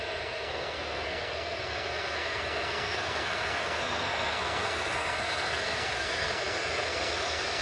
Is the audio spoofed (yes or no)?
yes